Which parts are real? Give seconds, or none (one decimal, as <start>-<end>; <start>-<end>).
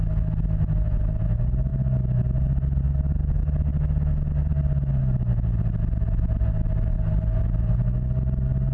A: 0.0-8.7